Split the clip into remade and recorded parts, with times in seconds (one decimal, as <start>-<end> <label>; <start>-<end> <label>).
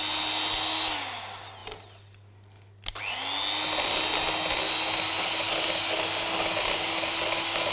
0.0-7.7 recorded